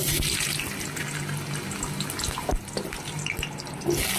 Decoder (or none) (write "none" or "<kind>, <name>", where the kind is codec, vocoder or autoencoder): none